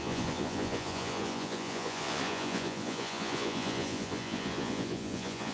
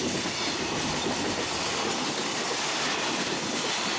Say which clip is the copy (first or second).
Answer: first